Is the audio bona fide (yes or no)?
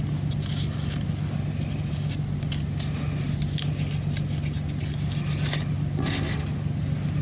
yes